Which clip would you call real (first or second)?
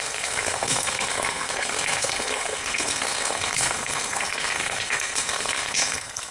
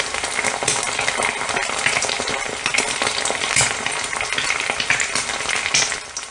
second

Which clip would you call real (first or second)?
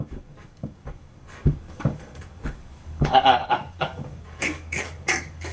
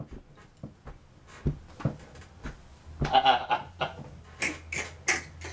second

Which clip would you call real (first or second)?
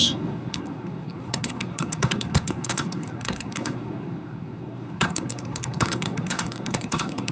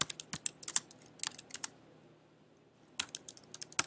second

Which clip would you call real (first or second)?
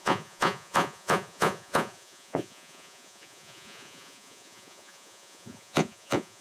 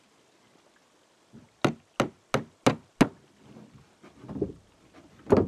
second